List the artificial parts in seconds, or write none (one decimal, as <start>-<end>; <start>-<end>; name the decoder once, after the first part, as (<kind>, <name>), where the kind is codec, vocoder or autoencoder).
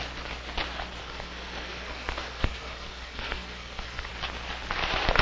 1.0-4.1 (codec, SNAC)